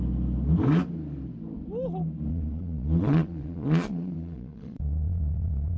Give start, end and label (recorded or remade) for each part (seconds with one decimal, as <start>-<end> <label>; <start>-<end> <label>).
0.0-2.3 recorded; 2.3-5.8 remade